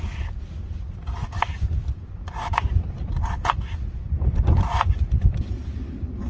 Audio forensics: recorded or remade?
recorded